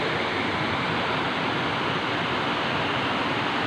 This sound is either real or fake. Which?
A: real